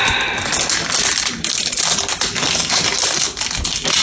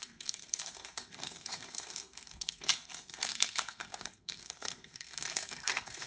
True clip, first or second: first